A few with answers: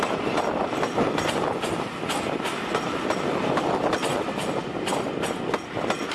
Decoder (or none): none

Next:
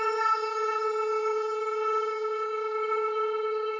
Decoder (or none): vocoder, HiFi-GAN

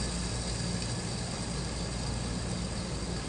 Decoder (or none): none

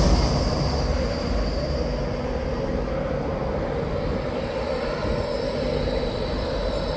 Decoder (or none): none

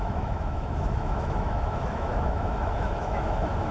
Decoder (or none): autoencoder, DAC-VAE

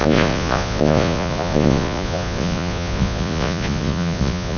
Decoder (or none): vocoder, Vocos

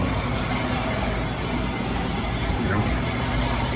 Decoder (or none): none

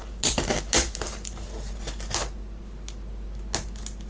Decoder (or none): none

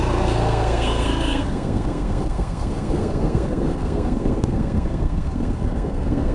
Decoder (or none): codec, SNAC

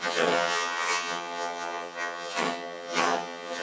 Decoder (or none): vocoder, HiFi-GAN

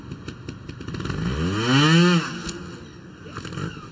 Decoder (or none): none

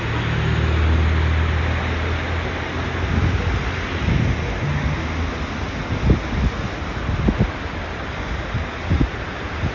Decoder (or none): none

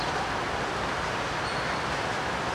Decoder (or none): vocoder, BigVGAN v2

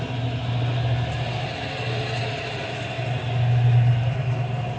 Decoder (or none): none